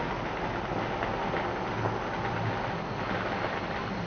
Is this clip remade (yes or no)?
no